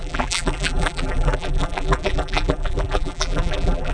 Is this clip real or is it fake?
fake